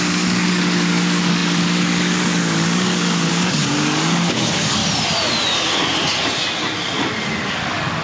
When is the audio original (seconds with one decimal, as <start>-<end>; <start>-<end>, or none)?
4.8-7.5

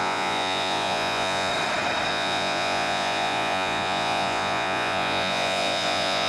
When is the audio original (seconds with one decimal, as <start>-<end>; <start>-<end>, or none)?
1.5-2.1

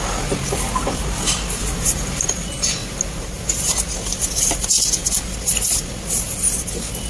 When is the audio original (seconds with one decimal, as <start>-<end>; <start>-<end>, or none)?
0.0-1.6; 2.2-2.8; 3.7-7.1